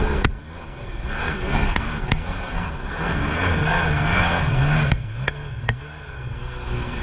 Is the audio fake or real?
fake